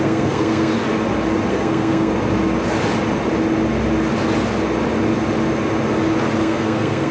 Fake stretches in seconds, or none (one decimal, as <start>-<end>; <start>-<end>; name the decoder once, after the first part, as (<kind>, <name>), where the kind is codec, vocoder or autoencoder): 0.0-0.7 (codec, SNAC); 1.5-2.1; 6.4-7.1